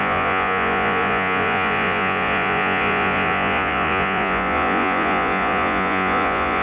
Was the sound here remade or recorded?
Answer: remade